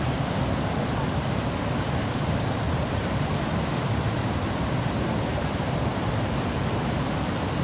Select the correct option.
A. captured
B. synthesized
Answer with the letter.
A